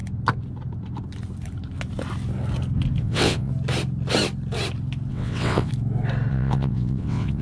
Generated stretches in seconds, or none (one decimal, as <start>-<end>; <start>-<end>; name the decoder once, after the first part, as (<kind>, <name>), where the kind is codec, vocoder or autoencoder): 3.0-3.5 (vocoder, WaveNeXt); 5.1-5.7; 6.3-7.4